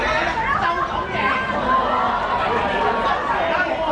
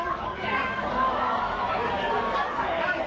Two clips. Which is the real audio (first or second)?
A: first